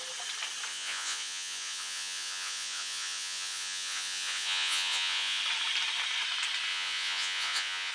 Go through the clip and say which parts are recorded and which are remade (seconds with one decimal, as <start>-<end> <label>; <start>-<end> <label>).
0.0-0.7 recorded; 0.7-5.4 remade; 5.4-6.7 recorded; 6.7-7.9 remade